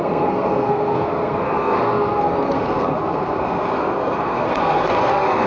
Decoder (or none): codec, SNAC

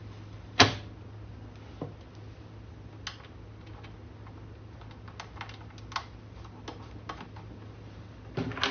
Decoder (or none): none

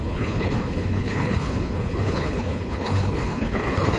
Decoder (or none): codec, HILCodec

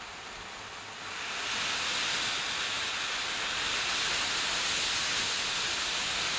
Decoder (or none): none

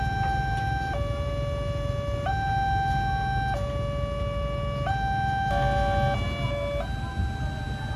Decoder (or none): none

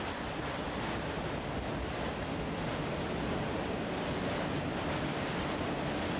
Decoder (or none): none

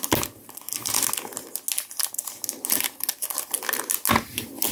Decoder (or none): none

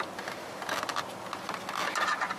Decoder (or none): none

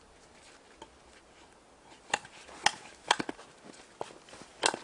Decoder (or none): none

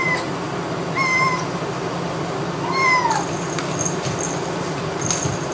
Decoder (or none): none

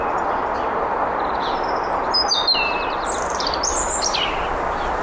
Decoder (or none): none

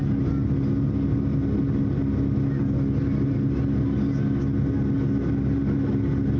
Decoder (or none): none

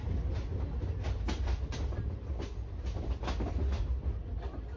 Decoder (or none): none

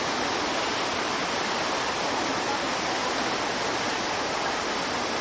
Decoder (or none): none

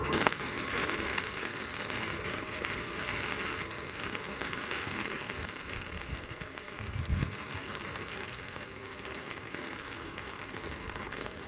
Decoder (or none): codec, SNAC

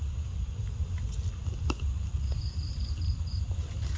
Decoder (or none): none